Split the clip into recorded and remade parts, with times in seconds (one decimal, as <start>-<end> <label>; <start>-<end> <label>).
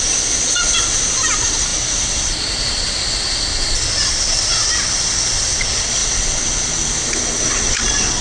0.0-1.7 recorded; 1.7-2.6 remade; 2.6-8.2 recorded